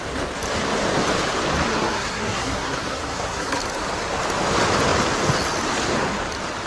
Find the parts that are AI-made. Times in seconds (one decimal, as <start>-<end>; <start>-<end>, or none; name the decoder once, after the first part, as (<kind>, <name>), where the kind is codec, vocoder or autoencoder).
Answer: 1.7-3.6 (codec, SNAC)